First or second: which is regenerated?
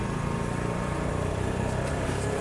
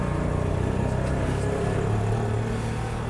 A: first